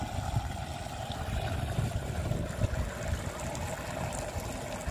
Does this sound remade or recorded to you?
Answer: recorded